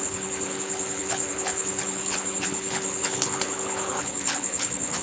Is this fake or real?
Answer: fake